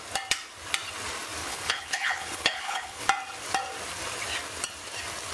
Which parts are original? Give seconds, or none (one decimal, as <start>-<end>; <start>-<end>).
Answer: 0.0-1.4; 3.0-5.3